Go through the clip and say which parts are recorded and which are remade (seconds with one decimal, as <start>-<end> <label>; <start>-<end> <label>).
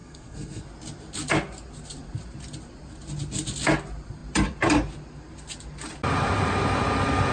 0.0-0.6 remade; 0.6-7.3 recorded